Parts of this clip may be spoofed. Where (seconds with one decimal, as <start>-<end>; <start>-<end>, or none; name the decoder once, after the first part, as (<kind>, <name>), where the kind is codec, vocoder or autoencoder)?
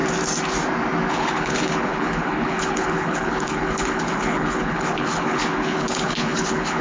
1.1-6.8 (codec, HILCodec)